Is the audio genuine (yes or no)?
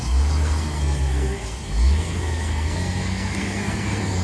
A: no